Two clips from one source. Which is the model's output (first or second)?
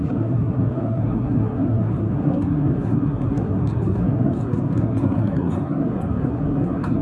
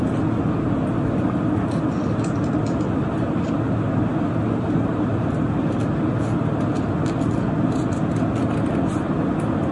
first